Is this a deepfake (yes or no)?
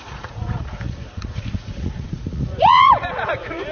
yes